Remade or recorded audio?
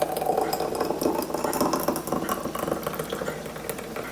recorded